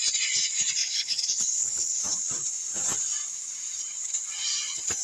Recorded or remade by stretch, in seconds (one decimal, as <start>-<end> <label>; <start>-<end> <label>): 0.0-0.8 recorded; 0.8-2.0 remade; 2.0-5.0 recorded